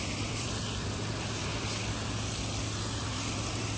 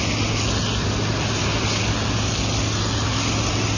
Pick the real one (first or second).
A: second